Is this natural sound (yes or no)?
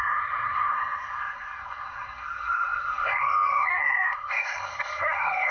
no